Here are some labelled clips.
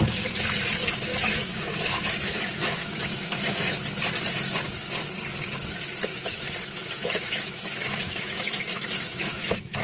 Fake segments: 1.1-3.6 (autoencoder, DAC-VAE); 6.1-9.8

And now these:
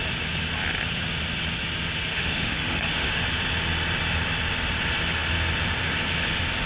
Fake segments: 2.1-3.2 (autoencoder, DAC-VAE)